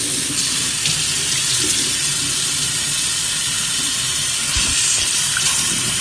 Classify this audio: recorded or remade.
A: remade